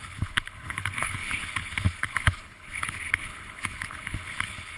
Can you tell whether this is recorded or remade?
remade